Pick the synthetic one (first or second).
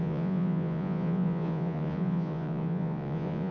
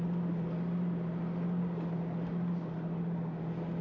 first